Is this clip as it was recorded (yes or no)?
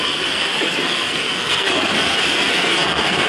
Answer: no